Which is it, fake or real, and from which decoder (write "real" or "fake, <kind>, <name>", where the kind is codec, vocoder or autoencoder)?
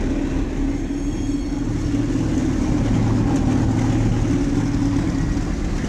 real